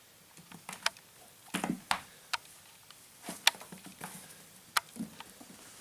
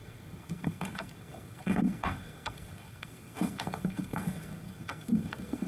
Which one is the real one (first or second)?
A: first